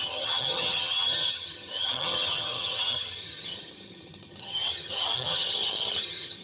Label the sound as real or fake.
fake